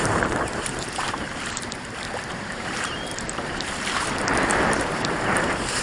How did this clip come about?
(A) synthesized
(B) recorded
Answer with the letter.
A